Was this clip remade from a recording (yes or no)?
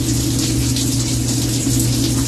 no